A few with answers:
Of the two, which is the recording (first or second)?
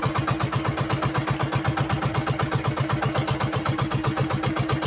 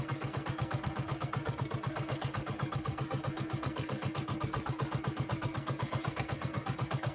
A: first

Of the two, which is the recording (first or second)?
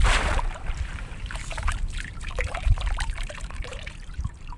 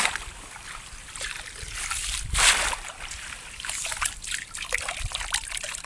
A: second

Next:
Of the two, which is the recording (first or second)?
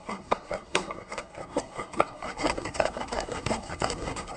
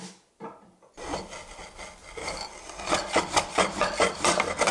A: second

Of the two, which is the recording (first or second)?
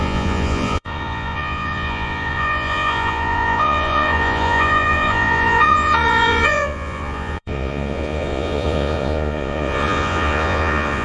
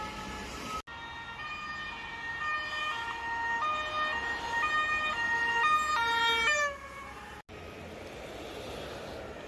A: second